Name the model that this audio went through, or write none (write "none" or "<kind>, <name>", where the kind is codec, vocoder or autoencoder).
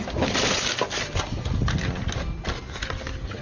none